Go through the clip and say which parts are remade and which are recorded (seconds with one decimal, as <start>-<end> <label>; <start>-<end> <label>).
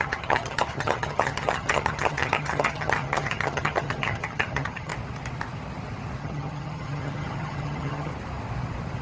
0.0-4.9 remade; 4.9-6.2 recorded; 6.2-8.1 remade; 8.1-9.0 recorded